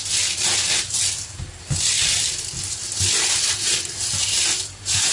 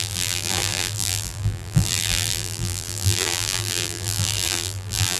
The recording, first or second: first